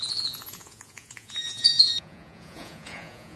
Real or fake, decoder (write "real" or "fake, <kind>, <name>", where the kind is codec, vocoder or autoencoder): fake, vocoder, Vocos